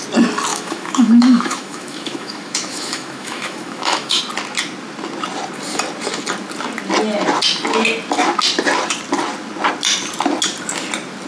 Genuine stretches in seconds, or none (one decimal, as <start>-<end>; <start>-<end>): 0.0-0.5; 4.2-11.3